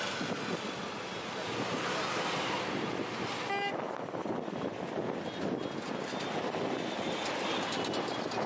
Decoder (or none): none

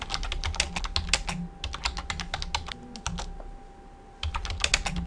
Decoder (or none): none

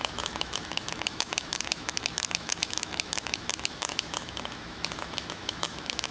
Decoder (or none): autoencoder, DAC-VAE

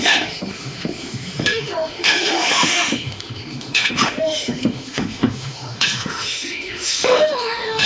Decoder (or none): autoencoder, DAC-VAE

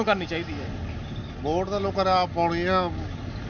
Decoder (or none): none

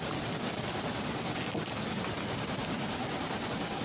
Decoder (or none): none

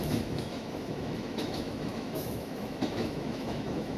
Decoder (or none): autoencoder, DAC-VAE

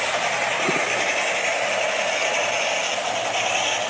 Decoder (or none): none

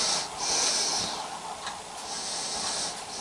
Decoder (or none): none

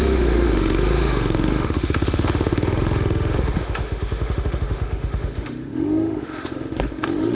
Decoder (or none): autoencoder, DAC-VAE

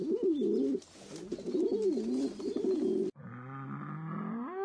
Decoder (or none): none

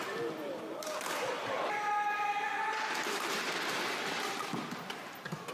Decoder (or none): none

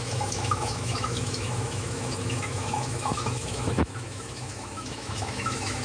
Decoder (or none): autoencoder, DAC-VAE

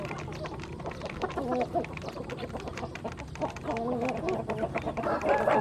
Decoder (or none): none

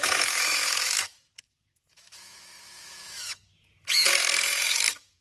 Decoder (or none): autoencoder, DAC-VAE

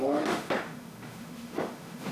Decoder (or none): autoencoder, DAC-VAE